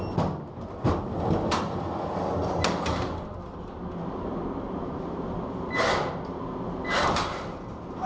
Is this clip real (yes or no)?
yes